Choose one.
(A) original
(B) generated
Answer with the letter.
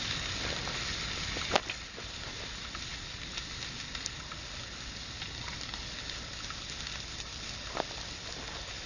A